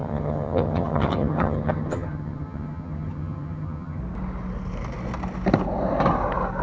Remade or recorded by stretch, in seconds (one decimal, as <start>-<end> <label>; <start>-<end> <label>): 0.0-4.0 remade; 4.0-6.6 recorded